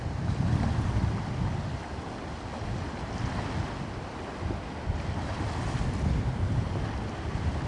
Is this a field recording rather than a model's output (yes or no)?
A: yes